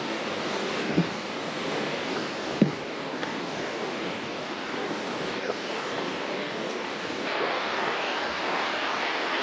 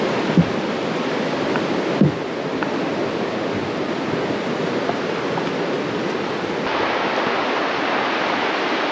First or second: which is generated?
first